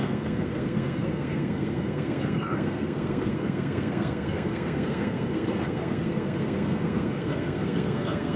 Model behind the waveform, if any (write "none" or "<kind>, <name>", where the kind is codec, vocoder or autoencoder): codec, SNAC